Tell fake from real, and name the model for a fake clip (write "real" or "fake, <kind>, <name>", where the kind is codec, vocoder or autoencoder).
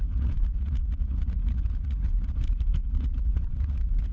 fake, vocoder, Vocos